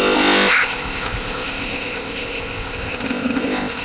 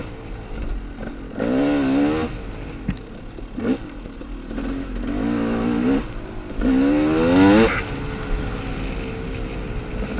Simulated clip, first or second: first